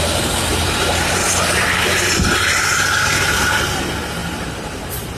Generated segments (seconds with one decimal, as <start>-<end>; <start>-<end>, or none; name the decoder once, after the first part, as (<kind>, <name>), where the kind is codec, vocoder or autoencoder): 0.5-3.6 (vocoder, BigVGAN v2); 4.2-4.8